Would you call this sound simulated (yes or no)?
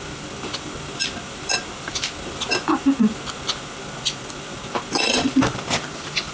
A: no